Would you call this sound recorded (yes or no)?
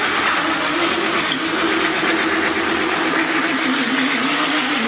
yes